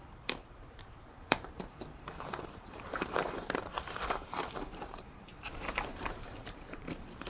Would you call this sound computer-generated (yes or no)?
yes